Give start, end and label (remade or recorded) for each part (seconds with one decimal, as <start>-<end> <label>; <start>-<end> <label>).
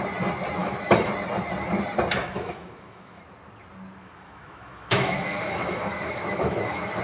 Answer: 0.0-0.6 recorded; 0.6-1.1 remade; 1.1-2.2 recorded; 2.2-3.2 remade; 3.2-4.0 recorded; 4.0-7.0 remade